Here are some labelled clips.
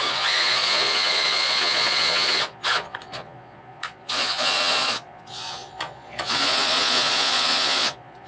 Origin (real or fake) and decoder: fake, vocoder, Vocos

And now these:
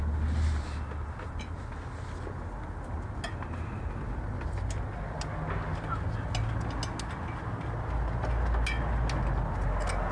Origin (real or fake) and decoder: real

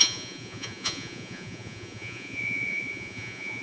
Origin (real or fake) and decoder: fake, vocoder, Vocos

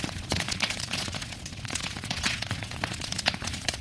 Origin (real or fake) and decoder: fake, vocoder, Vocos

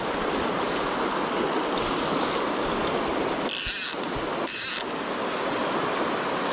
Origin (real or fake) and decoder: real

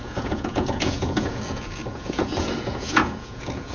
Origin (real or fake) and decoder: fake, vocoder, Vocos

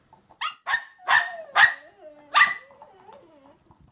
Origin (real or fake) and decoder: real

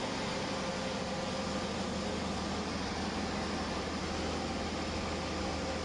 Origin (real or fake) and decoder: real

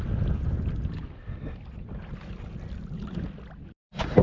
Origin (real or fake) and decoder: real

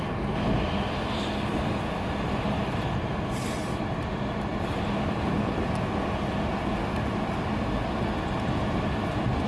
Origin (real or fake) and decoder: real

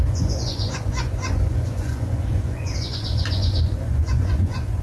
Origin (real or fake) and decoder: fake, vocoder, Vocos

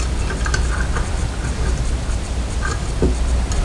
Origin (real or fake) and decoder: real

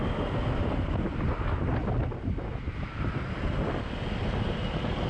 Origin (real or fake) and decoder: real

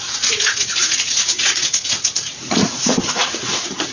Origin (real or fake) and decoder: fake, vocoder, Vocos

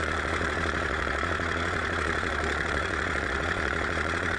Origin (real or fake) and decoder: fake, vocoder, Vocos